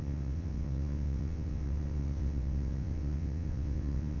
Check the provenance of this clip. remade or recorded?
remade